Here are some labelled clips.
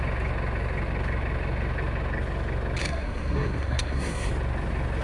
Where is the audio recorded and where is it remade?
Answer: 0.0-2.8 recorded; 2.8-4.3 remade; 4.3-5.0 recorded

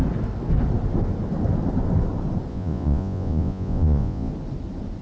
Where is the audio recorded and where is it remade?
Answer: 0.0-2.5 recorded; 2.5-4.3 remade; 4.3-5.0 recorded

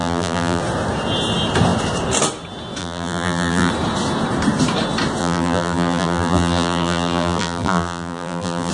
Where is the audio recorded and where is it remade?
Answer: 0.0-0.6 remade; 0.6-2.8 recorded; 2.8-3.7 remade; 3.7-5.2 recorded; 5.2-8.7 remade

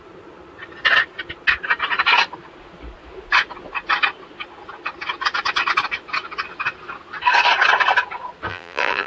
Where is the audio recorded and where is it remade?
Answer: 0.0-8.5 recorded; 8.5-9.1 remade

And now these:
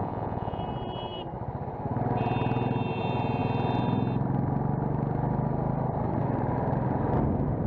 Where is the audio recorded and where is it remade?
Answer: 0.0-0.6 remade; 0.6-7.7 recorded

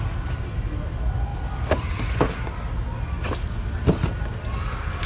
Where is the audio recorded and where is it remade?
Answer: 0.0-1.3 remade; 1.3-4.2 recorded; 4.2-5.1 remade